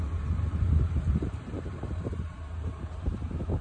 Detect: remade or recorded remade